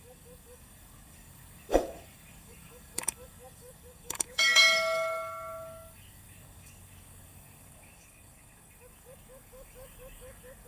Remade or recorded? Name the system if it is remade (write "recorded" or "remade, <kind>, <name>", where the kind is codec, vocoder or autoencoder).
remade, codec, DAC